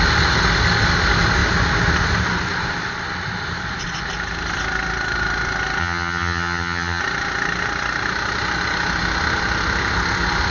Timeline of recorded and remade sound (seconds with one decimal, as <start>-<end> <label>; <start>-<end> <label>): 0.0-5.8 recorded; 5.8-7.0 remade; 7.0-10.5 recorded